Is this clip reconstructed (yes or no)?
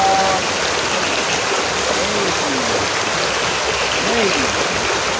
no